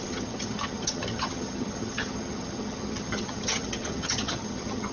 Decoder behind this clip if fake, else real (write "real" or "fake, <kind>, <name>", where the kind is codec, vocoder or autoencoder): fake, vocoder, HiFi-GAN